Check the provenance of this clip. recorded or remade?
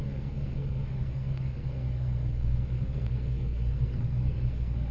remade